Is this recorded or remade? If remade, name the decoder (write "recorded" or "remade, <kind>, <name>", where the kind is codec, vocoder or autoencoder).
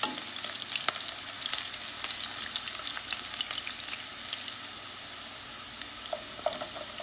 recorded